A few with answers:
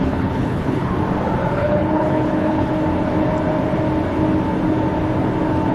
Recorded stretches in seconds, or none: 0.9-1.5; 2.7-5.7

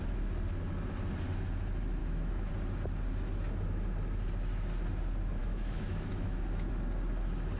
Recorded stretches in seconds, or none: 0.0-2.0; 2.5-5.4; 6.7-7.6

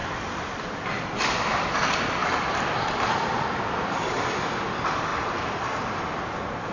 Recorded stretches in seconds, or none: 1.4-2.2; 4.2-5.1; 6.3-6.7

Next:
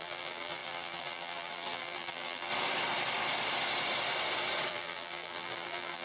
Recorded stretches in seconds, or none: 2.5-4.7

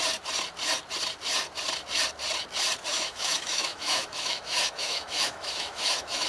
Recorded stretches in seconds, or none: 0.0-2.9

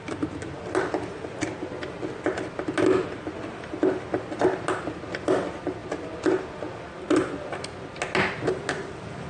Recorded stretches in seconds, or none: 0.0-9.3